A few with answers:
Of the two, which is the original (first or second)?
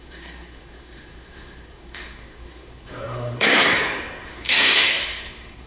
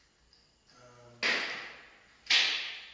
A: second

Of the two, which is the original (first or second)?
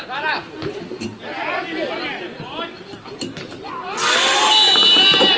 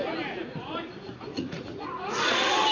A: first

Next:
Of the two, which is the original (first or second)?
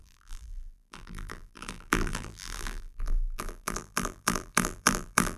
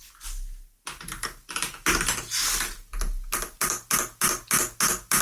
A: second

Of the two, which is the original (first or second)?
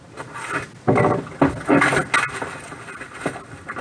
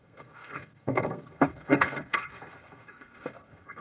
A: first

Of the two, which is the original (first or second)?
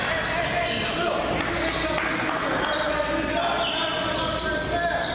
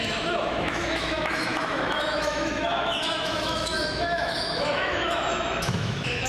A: first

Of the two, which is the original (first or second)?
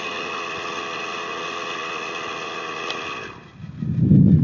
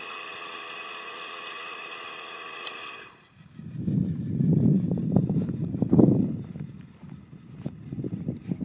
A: first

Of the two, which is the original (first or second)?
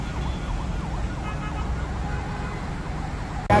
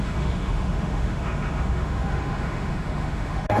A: first